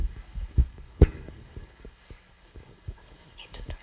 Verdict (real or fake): fake